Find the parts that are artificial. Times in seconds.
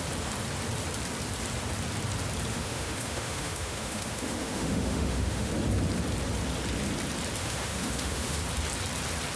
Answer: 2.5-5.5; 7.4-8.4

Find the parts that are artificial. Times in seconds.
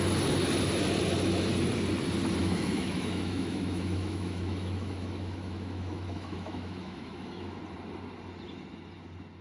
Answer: 2.4-7.6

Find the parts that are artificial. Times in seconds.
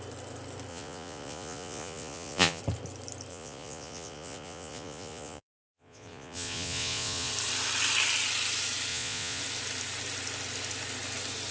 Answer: 0.7-2.6; 3.3-7.3; 8.9-9.4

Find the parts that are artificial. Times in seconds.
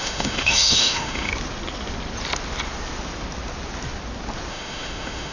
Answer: 0.0-1.3; 4.5-5.3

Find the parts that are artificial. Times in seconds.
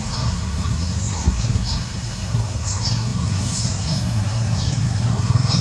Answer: 0.0-5.6